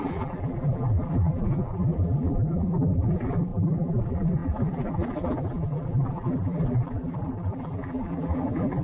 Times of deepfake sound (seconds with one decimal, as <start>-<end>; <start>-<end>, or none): 0.0-8.8